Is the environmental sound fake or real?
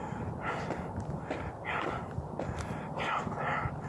real